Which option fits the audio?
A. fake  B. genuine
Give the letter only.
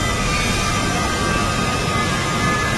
B